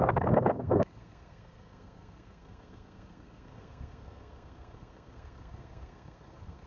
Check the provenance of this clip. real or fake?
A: fake